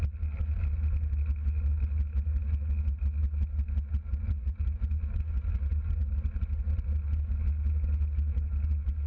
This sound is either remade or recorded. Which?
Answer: recorded